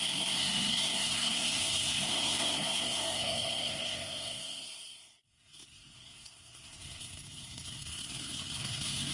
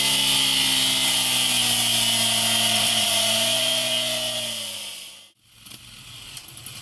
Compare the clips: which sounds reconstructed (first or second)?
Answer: first